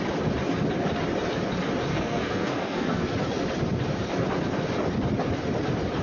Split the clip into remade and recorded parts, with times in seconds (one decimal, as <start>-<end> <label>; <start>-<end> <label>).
0.0-1.9 recorded; 1.9-3.1 remade; 3.1-6.0 recorded